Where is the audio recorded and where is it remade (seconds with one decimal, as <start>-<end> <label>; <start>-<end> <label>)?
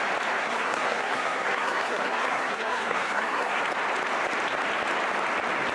0.0-0.4 recorded; 0.4-3.6 remade; 3.6-5.7 recorded